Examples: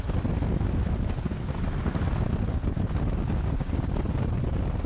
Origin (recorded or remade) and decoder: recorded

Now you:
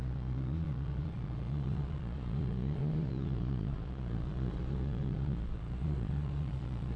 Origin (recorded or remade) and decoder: remade, vocoder, Vocos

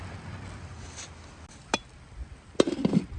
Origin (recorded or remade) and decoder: recorded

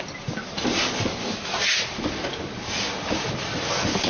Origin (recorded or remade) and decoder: recorded